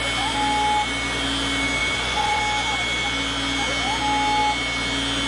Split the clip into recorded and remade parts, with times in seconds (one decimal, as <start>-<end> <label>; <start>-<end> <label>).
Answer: 0.0-1.8 recorded; 1.8-2.4 remade; 2.4-5.3 recorded